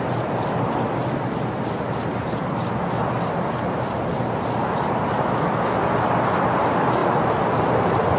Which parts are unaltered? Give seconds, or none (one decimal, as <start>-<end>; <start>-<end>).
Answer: 0.0-7.0